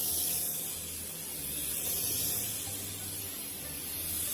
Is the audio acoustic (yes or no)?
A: yes